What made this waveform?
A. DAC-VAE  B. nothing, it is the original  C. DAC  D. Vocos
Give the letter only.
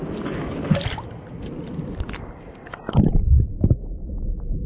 B